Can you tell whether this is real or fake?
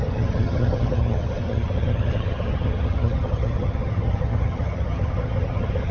fake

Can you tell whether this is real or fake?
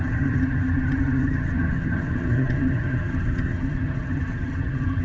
fake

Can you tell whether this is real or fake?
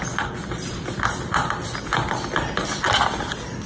real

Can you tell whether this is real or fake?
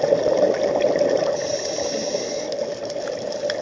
real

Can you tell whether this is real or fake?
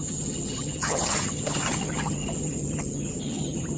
fake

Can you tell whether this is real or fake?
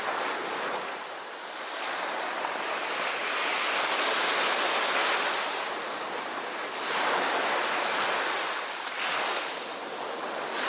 real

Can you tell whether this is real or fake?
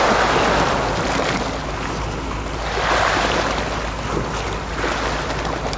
real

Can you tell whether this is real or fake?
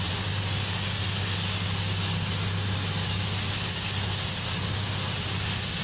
real